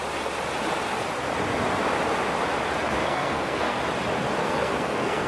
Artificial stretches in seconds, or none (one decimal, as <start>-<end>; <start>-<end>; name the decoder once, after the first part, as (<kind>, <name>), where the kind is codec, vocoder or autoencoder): 3.0-3.8 (codec, SNAC); 4.4-5.3